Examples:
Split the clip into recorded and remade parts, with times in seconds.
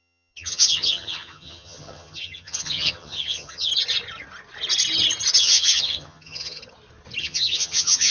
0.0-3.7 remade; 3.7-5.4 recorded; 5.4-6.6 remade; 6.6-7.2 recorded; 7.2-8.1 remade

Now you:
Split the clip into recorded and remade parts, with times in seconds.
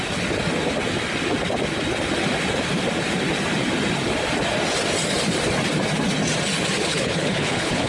0.0-6.9 recorded; 6.9-7.9 remade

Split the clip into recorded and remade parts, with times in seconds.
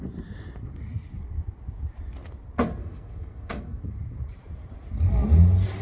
0.0-2.8 recorded; 2.8-3.8 remade; 3.8-5.8 recorded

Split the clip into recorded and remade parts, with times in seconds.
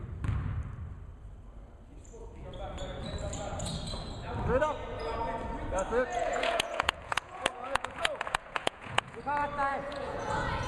0.0-6.1 recorded; 6.1-9.2 remade; 9.2-9.7 recorded; 9.7-10.7 remade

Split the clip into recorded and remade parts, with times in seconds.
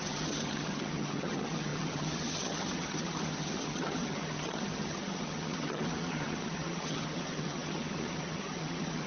0.0-9.1 remade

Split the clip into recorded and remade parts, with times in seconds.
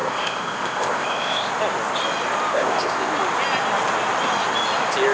0.0-1.5 remade; 1.5-2.5 recorded; 2.5-3.1 remade; 3.1-5.1 recorded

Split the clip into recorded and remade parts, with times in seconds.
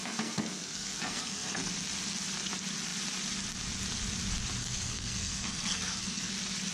0.0-1.7 remade; 1.7-4.6 recorded; 4.6-6.3 remade; 6.3-6.7 recorded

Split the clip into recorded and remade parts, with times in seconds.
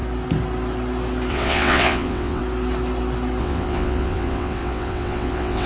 0.0-1.3 recorded; 1.3-2.4 remade; 2.4-3.4 recorded; 3.4-5.7 remade